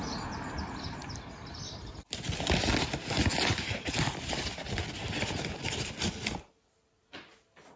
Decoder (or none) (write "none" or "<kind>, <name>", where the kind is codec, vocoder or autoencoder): none